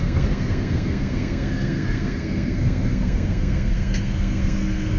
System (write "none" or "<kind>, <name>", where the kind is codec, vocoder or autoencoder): codec, SNAC